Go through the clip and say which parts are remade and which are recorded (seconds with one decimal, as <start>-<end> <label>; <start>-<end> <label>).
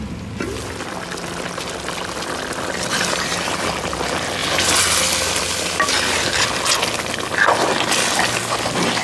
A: 0.0-9.0 recorded